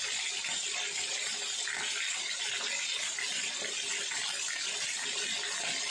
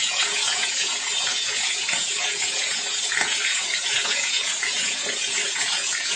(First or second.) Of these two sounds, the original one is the first